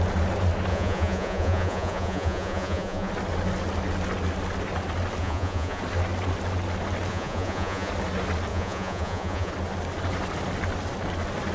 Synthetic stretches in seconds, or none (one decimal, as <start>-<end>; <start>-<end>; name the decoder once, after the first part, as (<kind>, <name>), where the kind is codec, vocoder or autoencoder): 0.7-3.1 (vocoder, Vocos); 5.2-5.8; 7.1-7.9; 8.5-9.5